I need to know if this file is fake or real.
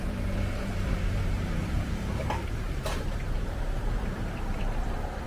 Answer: fake